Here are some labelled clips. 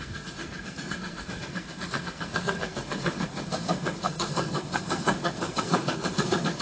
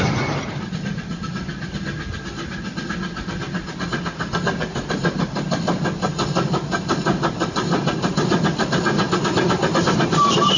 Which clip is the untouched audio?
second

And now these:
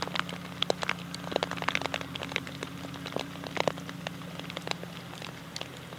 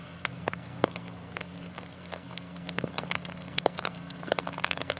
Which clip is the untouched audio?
first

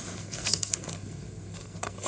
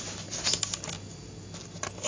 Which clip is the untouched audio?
second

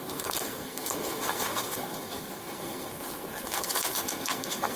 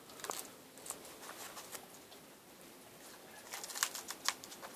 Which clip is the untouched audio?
second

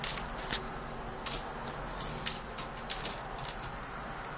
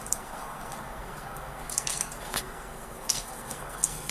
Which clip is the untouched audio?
first